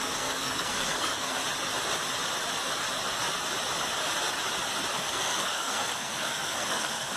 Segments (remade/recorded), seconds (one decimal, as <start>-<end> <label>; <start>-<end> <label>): 0.0-1.4 remade; 1.4-4.9 recorded; 4.9-7.2 remade